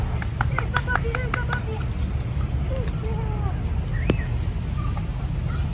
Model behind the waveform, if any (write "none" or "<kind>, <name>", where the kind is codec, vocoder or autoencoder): none